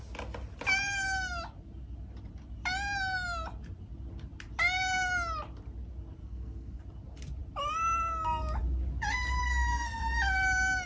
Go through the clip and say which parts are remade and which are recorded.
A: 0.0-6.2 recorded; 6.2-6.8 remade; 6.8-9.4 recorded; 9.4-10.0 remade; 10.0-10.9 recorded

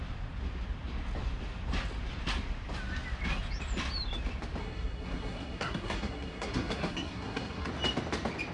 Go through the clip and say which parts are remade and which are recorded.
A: 0.0-4.6 recorded; 4.6-7.7 remade; 7.7-8.5 recorded

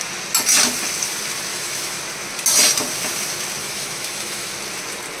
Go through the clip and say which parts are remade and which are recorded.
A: 0.0-1.5 recorded; 1.5-2.0 remade; 2.0-3.6 recorded; 3.6-4.5 remade; 4.5-5.2 recorded